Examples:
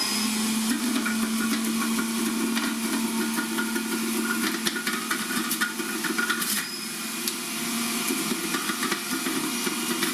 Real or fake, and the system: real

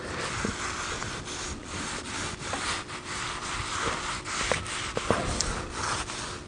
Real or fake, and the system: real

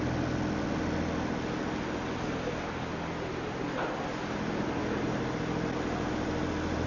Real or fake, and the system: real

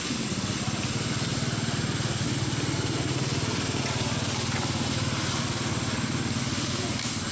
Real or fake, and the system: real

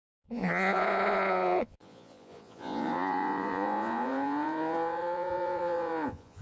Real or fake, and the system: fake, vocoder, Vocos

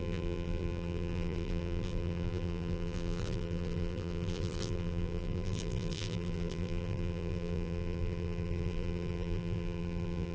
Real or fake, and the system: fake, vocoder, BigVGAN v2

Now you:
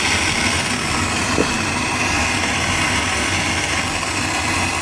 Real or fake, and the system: real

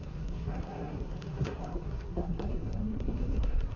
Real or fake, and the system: fake, codec, SNAC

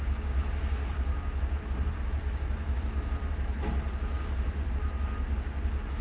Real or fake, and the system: real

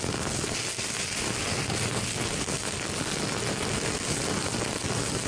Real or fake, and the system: real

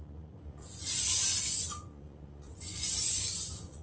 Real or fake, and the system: fake, vocoder, Vocos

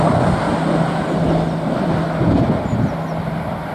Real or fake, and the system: real